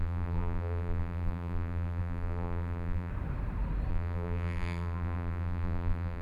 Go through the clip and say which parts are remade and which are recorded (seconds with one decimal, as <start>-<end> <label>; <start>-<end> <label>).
0.0-3.1 remade; 3.1-3.9 recorded; 3.9-6.2 remade